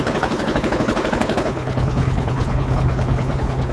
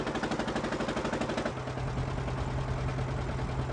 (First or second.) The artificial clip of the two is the first